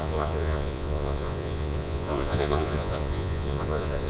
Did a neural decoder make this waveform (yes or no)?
yes